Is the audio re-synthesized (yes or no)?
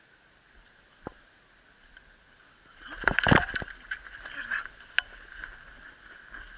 no